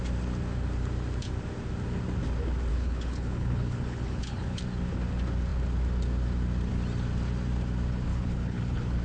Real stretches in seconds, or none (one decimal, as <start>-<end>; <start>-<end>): 0.0-2.7; 4.6-8.1